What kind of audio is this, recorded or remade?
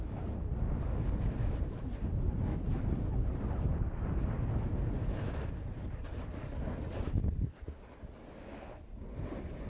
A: recorded